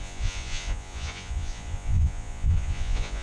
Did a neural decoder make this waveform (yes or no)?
yes